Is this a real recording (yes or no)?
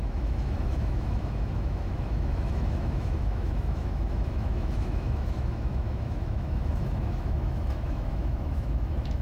no